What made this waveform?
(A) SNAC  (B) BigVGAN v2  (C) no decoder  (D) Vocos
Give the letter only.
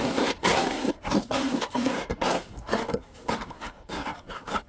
A